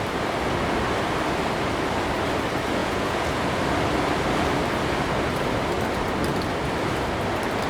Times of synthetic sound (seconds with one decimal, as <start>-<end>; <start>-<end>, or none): 2.8-3.6